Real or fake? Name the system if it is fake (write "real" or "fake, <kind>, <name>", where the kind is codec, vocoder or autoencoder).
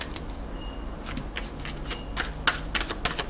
real